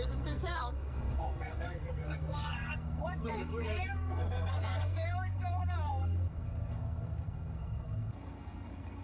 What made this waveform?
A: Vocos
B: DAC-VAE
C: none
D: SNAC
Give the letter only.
D